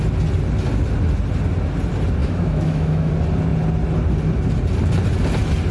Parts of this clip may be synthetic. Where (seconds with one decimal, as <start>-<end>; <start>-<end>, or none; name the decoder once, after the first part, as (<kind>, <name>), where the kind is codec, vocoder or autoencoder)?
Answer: 2.2-3.1 (autoencoder, DAC-VAE)